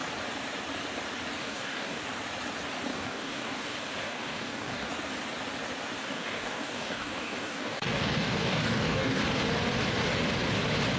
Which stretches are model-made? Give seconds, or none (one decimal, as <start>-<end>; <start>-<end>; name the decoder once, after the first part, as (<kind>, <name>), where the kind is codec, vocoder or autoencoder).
1.4-2.0 (codec, DAC); 2.9-4.9; 6.0-9.2